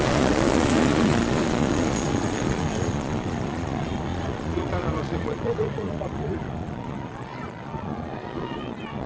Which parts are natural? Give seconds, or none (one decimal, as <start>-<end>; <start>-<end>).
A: none